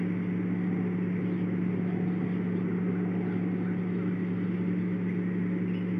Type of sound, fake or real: real